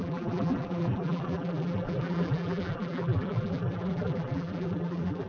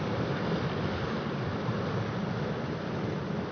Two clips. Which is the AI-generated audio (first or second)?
first